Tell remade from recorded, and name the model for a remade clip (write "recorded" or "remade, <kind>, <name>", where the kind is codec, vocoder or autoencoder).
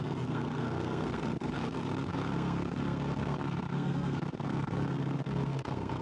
remade, codec, SNAC